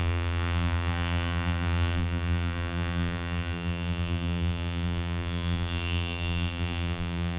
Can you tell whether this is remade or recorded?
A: remade